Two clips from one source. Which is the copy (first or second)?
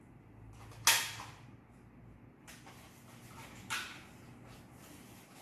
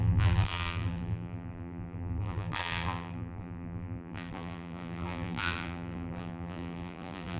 second